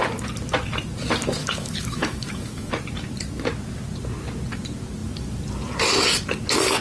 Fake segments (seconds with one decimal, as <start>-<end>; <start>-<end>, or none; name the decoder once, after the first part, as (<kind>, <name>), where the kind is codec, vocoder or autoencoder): 1.4-2.7 (autoencoder, DAC-VAE)